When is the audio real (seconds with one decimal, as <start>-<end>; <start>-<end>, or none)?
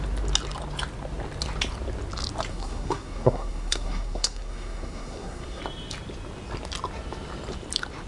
0.0-2.5; 5.6-8.1